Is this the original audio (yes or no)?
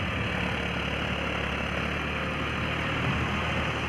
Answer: yes